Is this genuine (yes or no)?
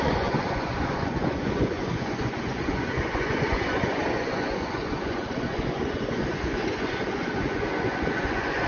no